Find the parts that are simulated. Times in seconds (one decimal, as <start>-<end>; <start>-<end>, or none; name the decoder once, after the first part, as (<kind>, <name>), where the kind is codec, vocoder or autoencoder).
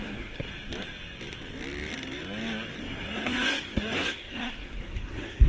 0.0-0.5 (codec, SNAC); 2.8-5.5